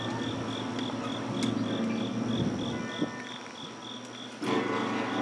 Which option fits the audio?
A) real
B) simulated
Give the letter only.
A